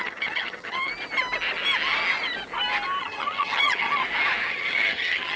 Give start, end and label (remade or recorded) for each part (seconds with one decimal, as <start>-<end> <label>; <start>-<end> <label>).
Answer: 0.0-0.9 remade; 0.9-3.0 recorded; 3.0-4.0 remade; 4.0-4.5 recorded; 4.5-5.4 remade